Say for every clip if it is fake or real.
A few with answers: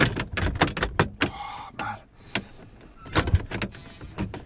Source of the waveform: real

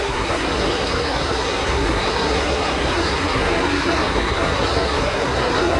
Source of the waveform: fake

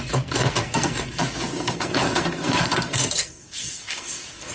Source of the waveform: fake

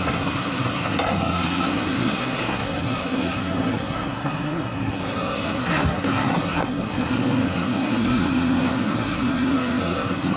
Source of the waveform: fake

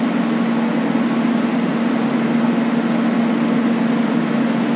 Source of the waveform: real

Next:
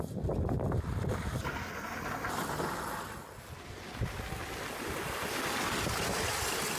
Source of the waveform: real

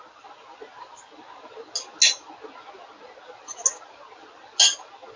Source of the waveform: real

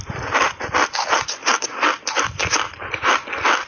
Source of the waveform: real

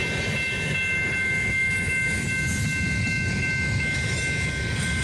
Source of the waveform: real